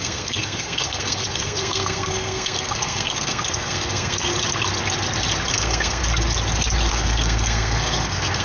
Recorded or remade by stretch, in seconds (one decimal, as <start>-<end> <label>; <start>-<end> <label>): 0.0-4.3 remade; 4.3-5.5 recorded; 5.5-6.0 remade; 6.0-6.9 recorded; 6.9-8.4 remade